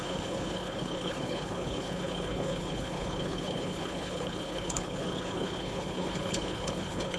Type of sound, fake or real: fake